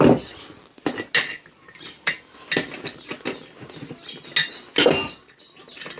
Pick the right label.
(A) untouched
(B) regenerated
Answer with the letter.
A